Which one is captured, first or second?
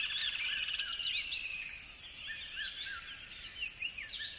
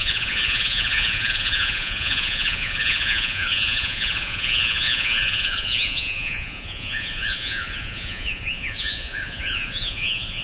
first